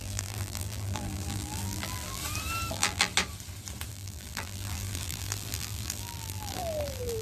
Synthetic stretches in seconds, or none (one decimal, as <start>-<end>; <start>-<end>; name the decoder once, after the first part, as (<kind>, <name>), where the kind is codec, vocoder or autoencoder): 0.0-2.2 (vocoder, BigVGAN v2); 2.7-3.1; 3.9-7.2